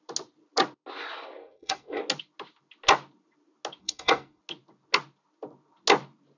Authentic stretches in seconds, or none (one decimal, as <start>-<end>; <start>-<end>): 0.0-1.4; 2.0-3.8; 4.4-6.4